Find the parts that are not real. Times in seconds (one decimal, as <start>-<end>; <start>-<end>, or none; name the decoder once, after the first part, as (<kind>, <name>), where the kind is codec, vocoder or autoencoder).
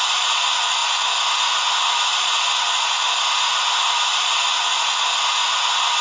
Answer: none